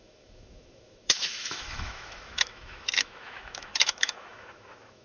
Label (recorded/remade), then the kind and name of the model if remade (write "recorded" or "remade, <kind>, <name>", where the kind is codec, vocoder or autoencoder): remade, autoencoder, DAC-VAE